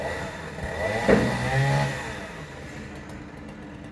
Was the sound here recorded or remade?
recorded